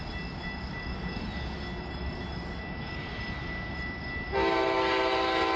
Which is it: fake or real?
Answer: real